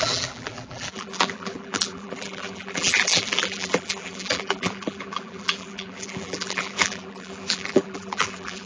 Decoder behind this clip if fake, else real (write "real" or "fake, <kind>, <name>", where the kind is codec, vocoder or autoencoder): fake, vocoder, BigVGAN v2